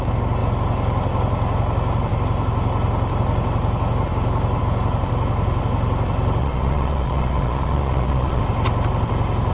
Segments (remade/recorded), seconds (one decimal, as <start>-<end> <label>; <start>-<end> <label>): 0.0-6.4 recorded; 6.4-8.4 remade; 8.4-9.5 recorded